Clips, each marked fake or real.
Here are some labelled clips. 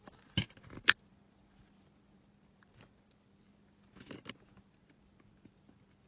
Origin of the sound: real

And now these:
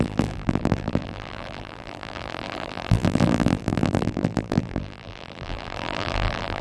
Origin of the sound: fake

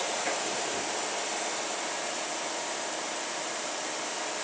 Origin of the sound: real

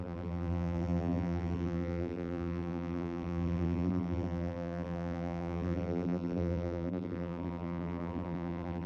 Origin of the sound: fake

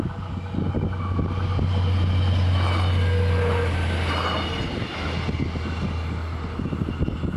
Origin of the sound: real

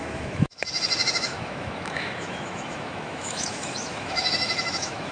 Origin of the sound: fake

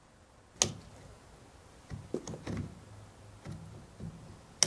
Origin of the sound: real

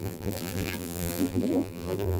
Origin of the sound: fake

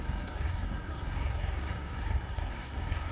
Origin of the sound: fake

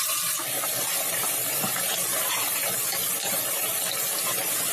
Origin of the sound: real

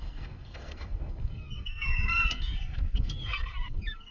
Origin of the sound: fake